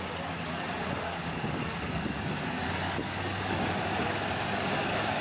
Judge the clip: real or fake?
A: fake